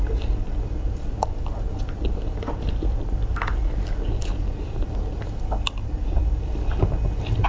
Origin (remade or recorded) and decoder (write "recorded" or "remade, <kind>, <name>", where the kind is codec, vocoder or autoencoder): recorded